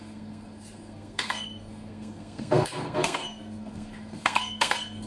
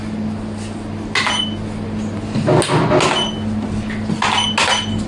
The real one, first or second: second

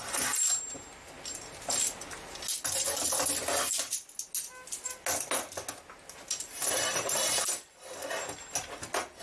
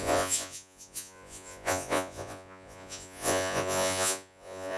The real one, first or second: first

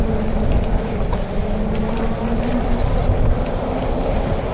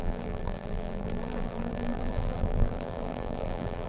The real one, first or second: first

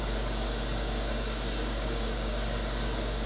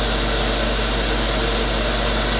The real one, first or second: second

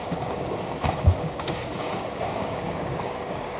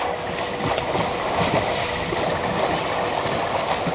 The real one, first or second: second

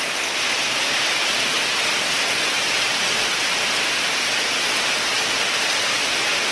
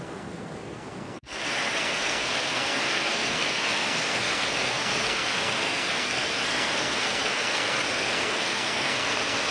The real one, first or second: first